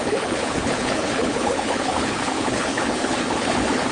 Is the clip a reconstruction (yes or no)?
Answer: yes